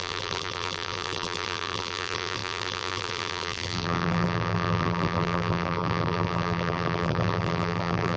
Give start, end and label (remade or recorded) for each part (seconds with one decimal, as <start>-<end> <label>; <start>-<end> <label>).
0.0-8.2 remade